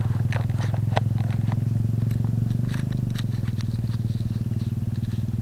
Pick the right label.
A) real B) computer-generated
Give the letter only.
A